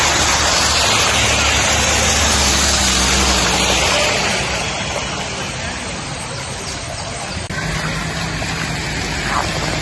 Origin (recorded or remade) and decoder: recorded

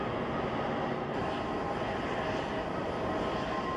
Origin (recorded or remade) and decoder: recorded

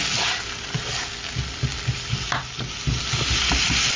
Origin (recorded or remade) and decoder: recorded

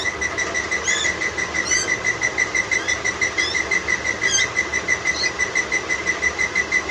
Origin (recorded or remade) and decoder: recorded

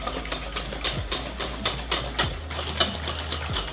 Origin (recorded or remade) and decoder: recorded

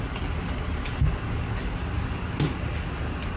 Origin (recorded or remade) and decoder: recorded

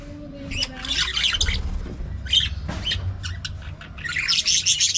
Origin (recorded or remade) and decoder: recorded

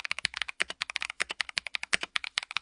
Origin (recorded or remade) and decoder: remade, autoencoder, DAC-VAE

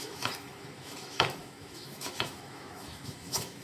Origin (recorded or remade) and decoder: remade, autoencoder, DAC-VAE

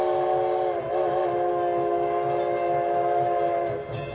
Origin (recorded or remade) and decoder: recorded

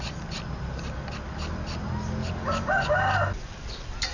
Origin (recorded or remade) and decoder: recorded